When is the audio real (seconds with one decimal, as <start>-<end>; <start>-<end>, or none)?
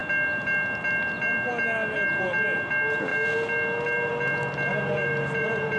0.0-4.7